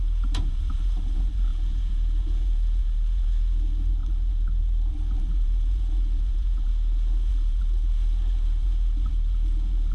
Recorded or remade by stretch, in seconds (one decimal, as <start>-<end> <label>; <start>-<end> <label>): 0.0-6.7 remade; 6.7-7.3 recorded; 7.3-9.9 remade